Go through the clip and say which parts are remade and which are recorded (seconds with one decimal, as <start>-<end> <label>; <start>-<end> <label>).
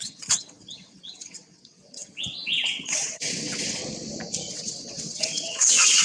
0.0-3.8 remade; 3.8-4.5 recorded; 4.5-6.0 remade